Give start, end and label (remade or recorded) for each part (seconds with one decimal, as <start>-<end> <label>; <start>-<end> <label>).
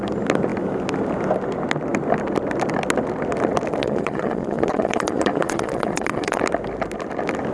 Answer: 0.0-3.8 recorded; 3.8-6.4 remade; 6.4-7.5 recorded